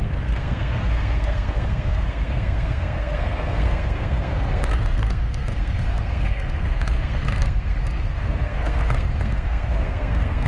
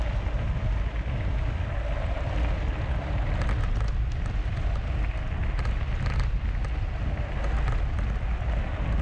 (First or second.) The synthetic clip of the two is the first